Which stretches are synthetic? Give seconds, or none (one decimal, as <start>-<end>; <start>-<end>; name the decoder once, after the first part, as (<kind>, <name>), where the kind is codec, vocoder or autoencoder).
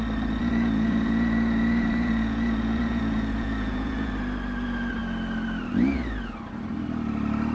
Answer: 0.4-4.1 (vocoder, Vocos)